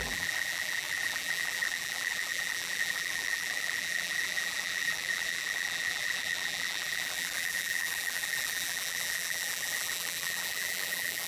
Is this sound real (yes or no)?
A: no